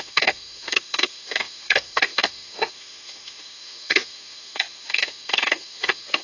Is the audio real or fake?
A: fake